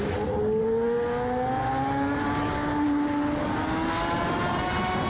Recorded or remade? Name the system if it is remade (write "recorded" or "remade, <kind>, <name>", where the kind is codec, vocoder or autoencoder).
recorded